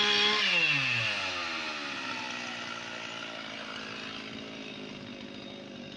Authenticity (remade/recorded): recorded